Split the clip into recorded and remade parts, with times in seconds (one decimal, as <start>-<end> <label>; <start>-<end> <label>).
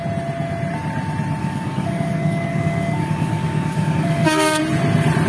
0.0-1.4 recorded; 1.4-4.6 remade; 4.6-5.3 recorded